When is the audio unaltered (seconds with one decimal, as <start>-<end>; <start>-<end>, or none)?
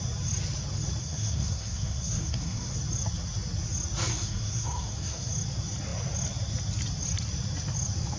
0.0-1.0; 2.7-4.1; 5.3-8.2